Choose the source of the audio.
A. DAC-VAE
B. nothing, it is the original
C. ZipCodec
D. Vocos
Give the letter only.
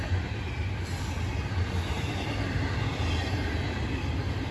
B